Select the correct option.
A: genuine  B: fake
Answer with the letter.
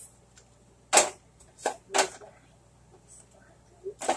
A